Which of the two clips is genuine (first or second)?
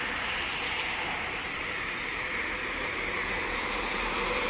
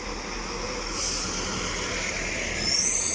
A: second